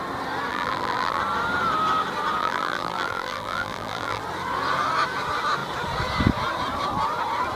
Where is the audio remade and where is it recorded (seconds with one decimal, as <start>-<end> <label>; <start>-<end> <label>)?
0.0-0.5 recorded; 0.5-1.2 remade; 1.2-2.4 recorded; 2.4-4.2 remade; 4.2-7.6 recorded